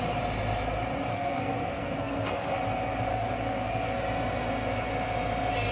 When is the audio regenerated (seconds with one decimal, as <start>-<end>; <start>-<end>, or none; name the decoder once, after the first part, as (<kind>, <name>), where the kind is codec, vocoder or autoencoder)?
1.1-2.6 (codec, SNAC); 3.1-4.0